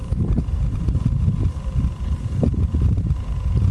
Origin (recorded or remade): remade